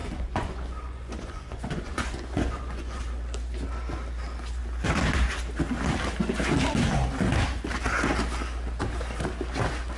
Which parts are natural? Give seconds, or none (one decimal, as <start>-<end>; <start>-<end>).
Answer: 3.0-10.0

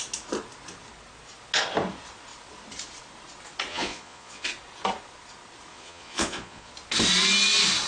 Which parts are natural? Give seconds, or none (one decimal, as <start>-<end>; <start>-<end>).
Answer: 0.0-3.7; 4.5-5.7; 6.7-7.9

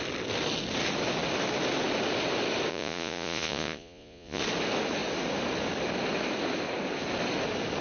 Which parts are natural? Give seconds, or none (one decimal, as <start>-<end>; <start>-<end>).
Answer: 0.0-2.7; 4.4-7.8